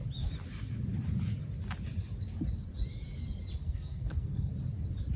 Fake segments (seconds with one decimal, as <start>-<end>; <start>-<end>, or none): 3.6-4.5